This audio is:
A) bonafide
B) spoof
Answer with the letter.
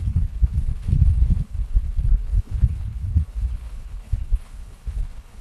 B